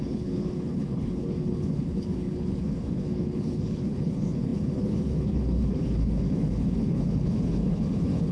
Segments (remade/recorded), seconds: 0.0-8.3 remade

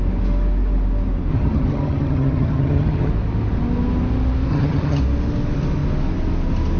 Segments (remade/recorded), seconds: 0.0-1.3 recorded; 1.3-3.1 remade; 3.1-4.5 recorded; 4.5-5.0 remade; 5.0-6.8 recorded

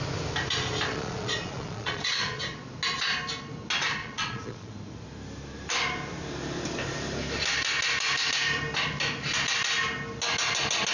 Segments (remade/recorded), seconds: 0.0-0.9 recorded; 0.9-2.4 remade; 2.4-4.0 recorded; 4.0-4.7 remade; 4.7-10.9 recorded